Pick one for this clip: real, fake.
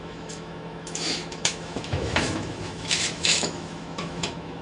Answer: fake